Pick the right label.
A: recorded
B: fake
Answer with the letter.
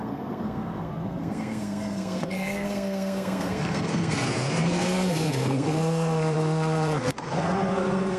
B